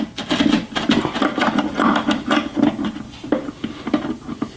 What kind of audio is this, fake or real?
real